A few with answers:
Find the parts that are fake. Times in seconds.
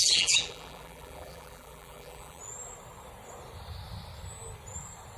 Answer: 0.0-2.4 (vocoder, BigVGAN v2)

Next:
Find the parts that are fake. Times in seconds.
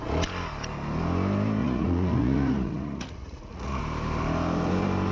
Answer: 1.6-3.8 (vocoder, Vocos)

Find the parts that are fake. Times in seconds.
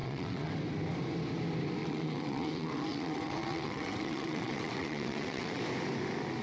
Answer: 0.0-0.5 (vocoder, WaveNeXt); 1.8-5.6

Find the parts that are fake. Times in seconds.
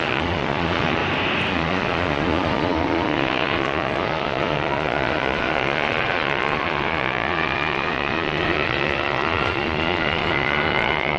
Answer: 0.0-1.0 (vocoder, Vocos); 1.5-11.2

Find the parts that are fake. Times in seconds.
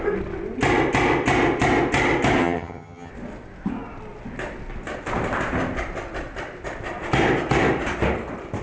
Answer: 2.4-3.1 (vocoder, HiFi-GAN)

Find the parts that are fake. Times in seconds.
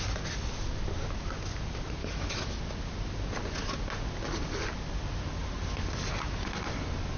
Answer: 2.0-2.6 (autoencoder, DAC-VAE)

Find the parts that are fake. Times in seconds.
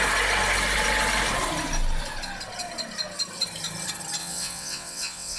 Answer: 4.2-5.4 (vocoder, WaveNeXt)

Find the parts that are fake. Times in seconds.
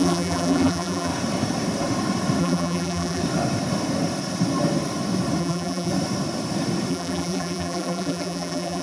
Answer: 0.0-1.1 (vocoder, BigVGAN v2); 2.4-3.2; 5.4-5.9; 6.9-8.8